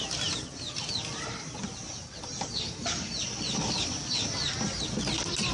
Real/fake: real